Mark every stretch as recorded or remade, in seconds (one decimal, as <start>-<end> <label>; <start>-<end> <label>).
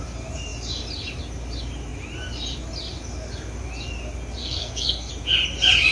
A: 0.0-4.4 recorded; 4.4-5.1 remade; 5.1-5.9 recorded